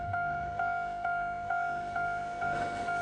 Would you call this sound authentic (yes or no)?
no